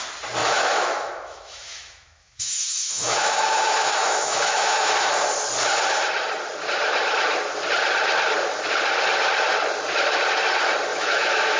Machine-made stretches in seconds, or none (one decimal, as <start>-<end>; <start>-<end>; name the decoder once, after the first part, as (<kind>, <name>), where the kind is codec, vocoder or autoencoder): 0.4-4.9 (autoencoder, DAC-VAE); 10.9-11.6